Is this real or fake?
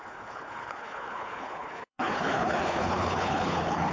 fake